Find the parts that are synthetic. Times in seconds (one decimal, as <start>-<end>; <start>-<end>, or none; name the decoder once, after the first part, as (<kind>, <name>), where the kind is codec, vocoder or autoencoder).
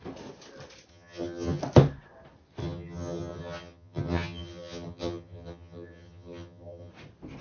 0.9-1.6 (vocoder, HiFi-GAN); 2.6-6.9